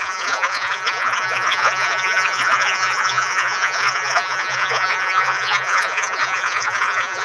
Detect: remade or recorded remade